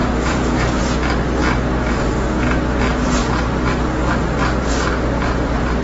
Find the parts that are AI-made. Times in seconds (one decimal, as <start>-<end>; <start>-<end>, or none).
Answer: 0.0-0.8